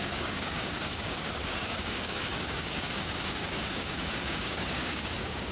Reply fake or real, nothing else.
fake